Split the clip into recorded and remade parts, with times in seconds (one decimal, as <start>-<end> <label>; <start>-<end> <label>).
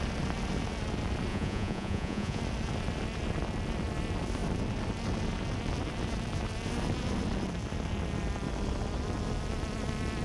0.0-1.3 recorded; 1.3-2.4 remade; 2.4-10.2 recorded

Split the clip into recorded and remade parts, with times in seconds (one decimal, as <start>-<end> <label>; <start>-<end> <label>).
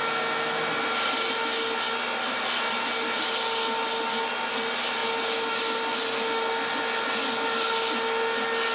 0.0-8.7 recorded